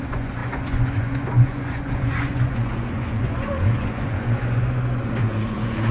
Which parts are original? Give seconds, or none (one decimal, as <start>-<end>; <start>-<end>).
none